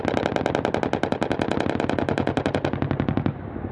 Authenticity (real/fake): real